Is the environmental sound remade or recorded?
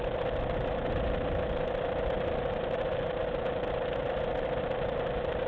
recorded